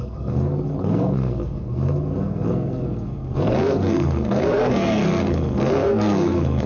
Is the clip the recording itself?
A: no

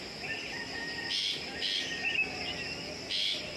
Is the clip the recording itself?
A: yes